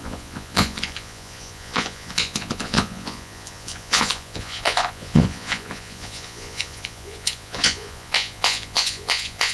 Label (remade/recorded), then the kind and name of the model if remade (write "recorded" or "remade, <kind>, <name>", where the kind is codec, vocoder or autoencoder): remade, vocoder, Vocos